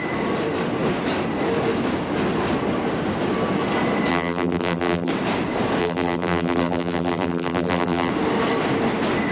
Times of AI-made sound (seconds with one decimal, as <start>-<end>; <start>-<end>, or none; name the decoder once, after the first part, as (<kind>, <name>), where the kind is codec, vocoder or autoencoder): 4.1-5.1 (vocoder, BigVGAN v2); 5.8-8.1